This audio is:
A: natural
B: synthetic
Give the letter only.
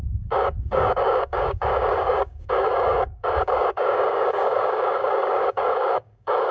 B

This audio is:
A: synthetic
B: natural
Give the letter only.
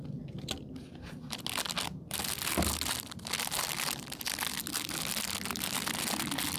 B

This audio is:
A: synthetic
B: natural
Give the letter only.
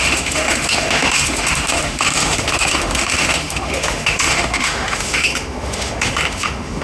A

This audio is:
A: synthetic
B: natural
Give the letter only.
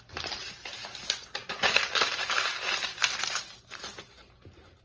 A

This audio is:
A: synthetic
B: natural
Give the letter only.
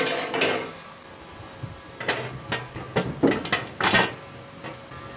B